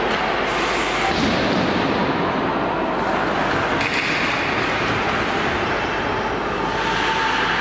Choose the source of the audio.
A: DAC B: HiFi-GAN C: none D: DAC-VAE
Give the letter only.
C